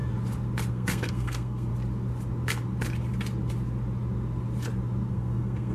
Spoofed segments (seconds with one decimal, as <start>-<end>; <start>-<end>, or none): 0.7-1.7; 5.1-5.7